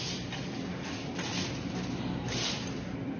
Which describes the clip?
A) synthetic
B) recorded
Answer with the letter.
B